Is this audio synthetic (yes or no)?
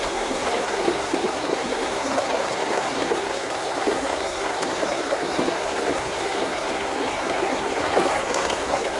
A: yes